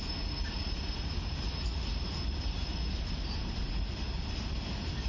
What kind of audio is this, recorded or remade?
recorded